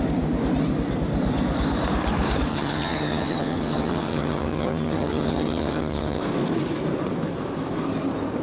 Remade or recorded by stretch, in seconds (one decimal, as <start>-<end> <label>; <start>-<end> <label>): 0.0-2.5 recorded; 2.5-6.2 remade; 6.2-8.4 recorded